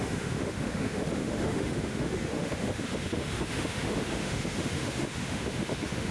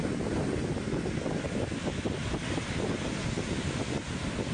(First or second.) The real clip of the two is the second